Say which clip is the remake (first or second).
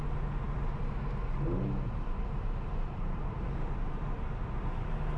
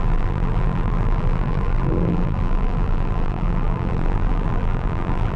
second